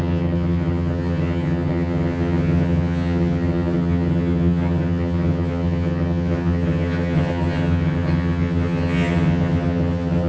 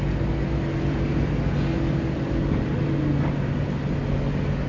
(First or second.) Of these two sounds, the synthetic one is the first